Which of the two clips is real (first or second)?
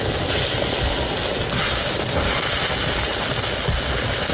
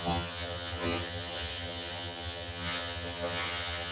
first